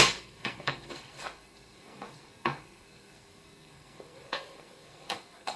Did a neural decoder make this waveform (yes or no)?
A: yes